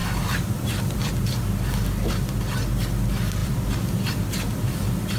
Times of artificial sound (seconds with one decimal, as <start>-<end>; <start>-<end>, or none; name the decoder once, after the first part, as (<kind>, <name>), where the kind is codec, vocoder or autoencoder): 0.0-1.1 (vocoder, BigVGAN v2); 3.4-4.1